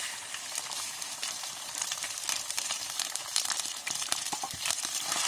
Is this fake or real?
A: fake